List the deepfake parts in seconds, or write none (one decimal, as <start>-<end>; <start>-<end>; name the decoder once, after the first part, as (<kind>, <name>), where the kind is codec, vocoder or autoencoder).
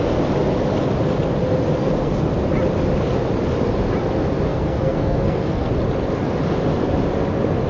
1.8-2.3 (codec, SNAC); 4.5-5.7